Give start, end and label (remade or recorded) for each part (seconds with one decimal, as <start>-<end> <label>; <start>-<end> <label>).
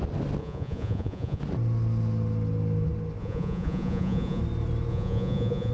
0.0-0.4 recorded; 0.4-1.4 remade; 1.4-3.2 recorded; 3.2-4.4 remade; 4.4-4.9 recorded; 4.9-5.7 remade